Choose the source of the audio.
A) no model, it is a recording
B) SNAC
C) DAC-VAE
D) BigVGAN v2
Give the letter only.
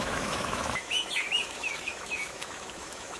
C